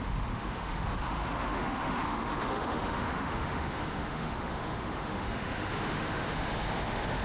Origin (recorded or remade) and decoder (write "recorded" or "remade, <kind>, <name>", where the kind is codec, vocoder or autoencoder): remade, autoencoder, DAC-VAE